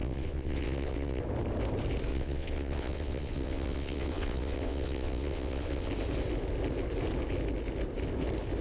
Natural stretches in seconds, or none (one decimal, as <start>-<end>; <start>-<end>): 1.2-2.1; 5.9-8.6